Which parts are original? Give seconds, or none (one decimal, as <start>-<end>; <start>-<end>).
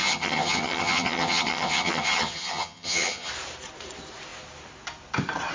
3.3-5.5